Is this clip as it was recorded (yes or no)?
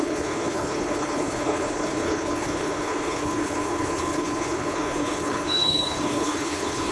no